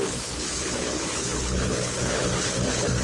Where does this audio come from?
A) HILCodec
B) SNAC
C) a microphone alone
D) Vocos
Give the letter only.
A